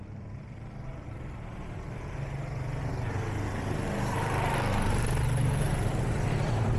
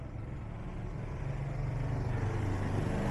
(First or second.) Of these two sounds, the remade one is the first